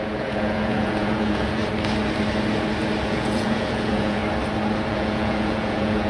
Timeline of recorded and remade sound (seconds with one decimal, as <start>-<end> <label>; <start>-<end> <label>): 0.0-1.6 remade; 1.6-3.1 recorded; 3.1-4.2 remade; 4.2-4.9 recorded; 4.9-6.1 remade